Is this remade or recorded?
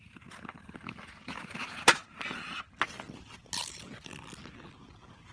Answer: recorded